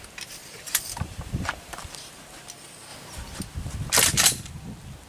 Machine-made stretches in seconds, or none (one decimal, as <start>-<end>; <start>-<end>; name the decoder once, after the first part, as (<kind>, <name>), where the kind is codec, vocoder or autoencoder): 0.4-2.2 (vocoder, BigVGAN v2)